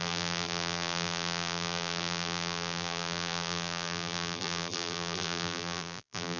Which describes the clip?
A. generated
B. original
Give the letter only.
A